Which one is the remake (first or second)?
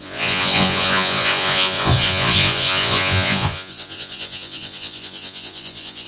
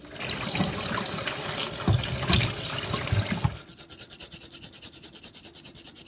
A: first